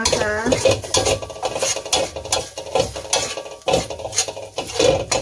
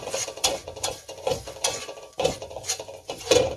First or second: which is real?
first